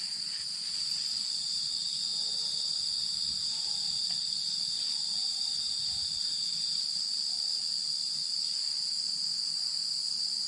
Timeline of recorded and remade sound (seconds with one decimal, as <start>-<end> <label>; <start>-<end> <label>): 0.0-2.1 remade; 2.1-4.0 recorded; 4.0-10.5 remade

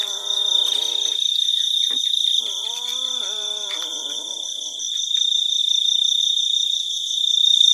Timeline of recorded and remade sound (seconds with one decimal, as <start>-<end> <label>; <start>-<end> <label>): 0.0-0.4 remade; 0.4-1.5 recorded; 1.5-5.6 remade; 5.6-6.2 recorded; 6.2-7.7 remade

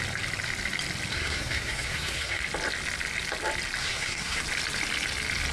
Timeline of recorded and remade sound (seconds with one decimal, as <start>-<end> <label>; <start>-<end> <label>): 0.0-1.1 recorded; 1.1-2.4 remade; 2.4-3.8 recorded; 3.8-4.4 remade; 4.4-5.5 recorded

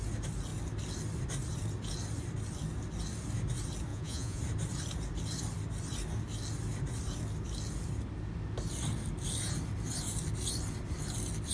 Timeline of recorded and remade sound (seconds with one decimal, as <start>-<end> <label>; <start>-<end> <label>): 0.0-3.9 recorded; 3.9-4.4 remade; 4.4-11.5 recorded

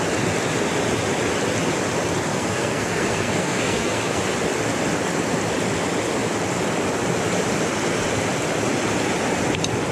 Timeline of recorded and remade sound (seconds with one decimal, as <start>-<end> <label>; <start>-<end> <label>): 0.0-2.3 recorded; 2.3-4.2 remade; 4.2-9.9 recorded

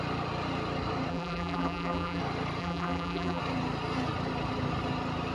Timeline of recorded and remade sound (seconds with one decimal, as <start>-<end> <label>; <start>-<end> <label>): 0.0-1.1 recorded; 1.1-2.2 remade; 2.2-2.6 recorded; 2.6-3.4 remade; 3.4-5.3 recorded

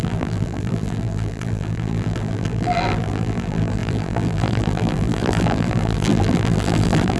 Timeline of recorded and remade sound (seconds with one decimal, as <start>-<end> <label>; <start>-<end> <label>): 0.0-7.2 remade

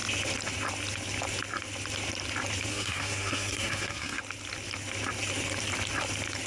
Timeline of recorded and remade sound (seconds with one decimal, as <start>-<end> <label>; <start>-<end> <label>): 0.0-2.7 recorded; 2.7-4.2 remade; 4.2-6.5 recorded